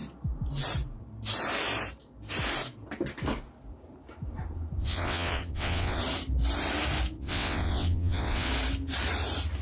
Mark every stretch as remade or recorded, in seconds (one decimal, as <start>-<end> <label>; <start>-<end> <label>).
0.0-4.8 recorded; 4.8-6.0 remade; 6.0-7.2 recorded; 7.2-8.5 remade; 8.5-9.6 recorded